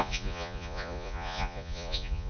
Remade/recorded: remade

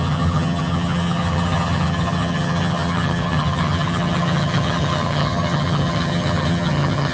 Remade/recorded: remade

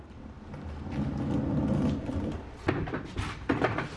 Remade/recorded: recorded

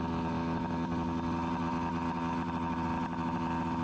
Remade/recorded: recorded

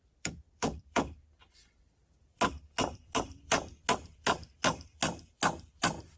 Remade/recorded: remade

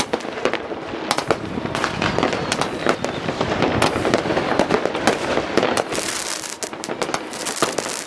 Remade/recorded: recorded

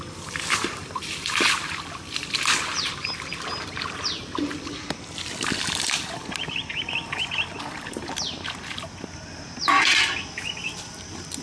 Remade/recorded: recorded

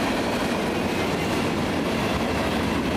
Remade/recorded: recorded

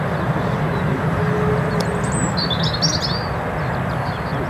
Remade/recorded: recorded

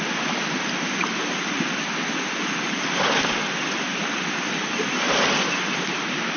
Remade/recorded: recorded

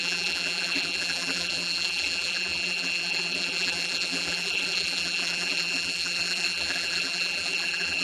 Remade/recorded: remade